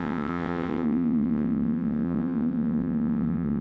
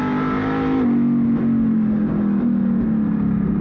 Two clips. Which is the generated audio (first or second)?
first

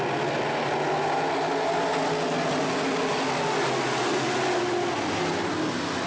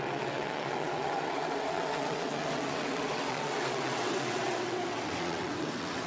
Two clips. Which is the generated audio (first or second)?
second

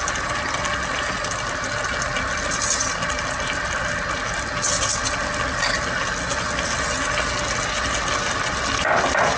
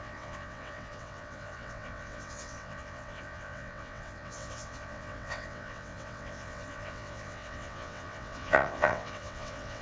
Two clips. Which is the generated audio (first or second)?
second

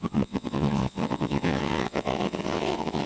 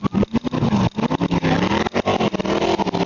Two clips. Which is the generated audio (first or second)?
first